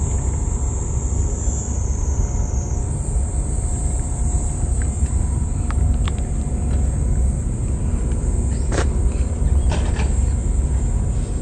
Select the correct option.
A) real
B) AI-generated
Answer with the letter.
A